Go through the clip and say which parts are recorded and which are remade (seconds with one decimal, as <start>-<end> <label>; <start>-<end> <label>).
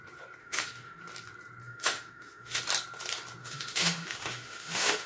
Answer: 0.0-0.4 recorded; 0.4-1.0 remade; 1.0-1.6 recorded; 1.6-2.6 remade; 2.6-3.4 recorded; 3.4-5.1 remade